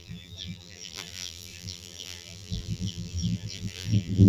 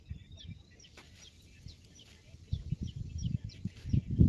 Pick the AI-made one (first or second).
first